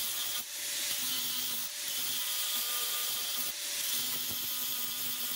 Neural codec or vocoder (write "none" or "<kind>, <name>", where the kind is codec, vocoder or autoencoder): vocoder, BigVGAN v2